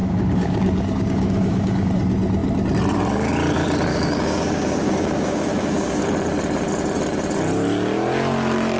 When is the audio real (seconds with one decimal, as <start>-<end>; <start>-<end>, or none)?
1.9-3.9; 6.0-8.8